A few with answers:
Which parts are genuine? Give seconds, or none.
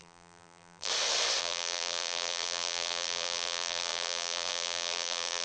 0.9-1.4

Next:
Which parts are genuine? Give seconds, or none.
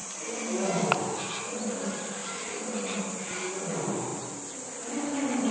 0.0-5.5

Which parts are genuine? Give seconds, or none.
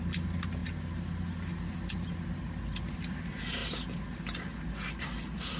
0.0-5.6